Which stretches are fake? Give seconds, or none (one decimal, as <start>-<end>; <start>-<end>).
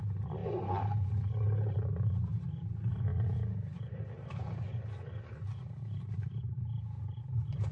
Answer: none